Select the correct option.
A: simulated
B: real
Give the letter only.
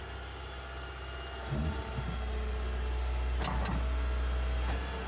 B